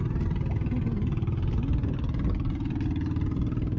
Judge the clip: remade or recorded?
recorded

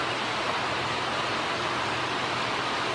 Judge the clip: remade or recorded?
recorded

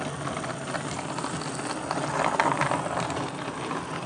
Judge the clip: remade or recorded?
recorded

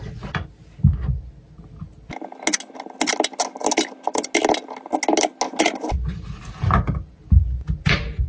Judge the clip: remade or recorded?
recorded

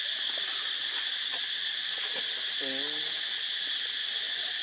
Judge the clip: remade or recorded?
recorded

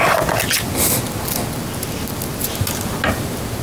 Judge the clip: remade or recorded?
recorded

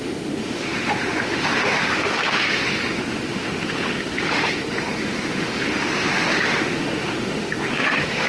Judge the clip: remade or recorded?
remade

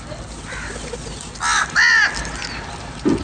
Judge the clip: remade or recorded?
recorded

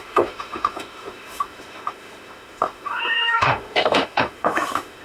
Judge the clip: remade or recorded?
remade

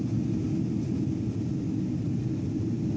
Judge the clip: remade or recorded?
recorded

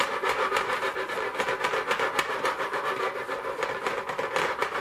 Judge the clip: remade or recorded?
recorded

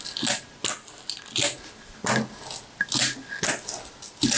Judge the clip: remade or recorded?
recorded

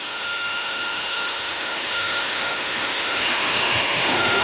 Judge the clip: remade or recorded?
remade